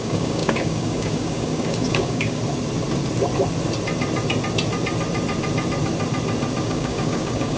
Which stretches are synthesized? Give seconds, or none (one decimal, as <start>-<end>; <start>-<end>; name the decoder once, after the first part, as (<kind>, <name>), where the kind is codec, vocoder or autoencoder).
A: 0.0-2.4 (codec, DAC); 6.6-7.6

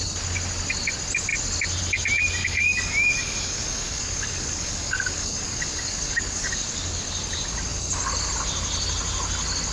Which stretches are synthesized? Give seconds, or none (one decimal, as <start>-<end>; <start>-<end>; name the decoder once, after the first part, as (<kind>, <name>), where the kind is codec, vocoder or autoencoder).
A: 2.4-7.0 (codec, DAC)

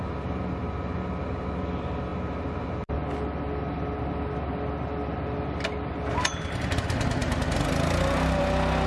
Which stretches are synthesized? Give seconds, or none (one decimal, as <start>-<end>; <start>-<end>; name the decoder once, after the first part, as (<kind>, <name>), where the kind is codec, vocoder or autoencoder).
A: none

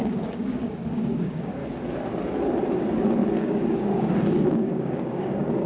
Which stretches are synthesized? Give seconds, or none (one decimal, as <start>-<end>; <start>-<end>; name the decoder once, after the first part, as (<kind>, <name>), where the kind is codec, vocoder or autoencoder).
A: 0.0-1.6 (codec, DAC); 3.4-5.7

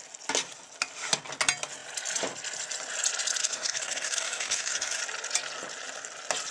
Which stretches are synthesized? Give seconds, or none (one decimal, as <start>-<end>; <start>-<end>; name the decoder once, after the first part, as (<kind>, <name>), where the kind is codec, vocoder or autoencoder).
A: 3.4-5.0 (codec, DAC)

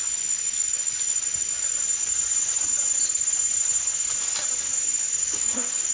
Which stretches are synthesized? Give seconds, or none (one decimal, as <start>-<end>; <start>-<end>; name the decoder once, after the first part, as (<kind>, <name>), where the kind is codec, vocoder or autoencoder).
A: 5.2-5.9 (codec, DAC)

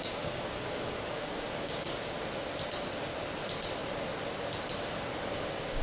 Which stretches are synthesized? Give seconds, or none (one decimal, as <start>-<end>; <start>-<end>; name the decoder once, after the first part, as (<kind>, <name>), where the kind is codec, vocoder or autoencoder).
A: 0.0-2.1 (codec, DAC)

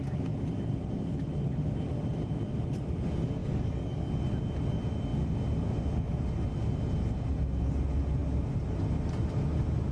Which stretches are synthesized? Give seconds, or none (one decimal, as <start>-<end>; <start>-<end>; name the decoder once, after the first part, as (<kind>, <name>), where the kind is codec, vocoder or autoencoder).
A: 3.4-4.1 (codec, DAC)